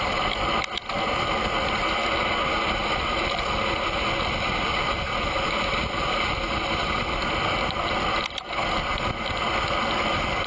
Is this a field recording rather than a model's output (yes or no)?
yes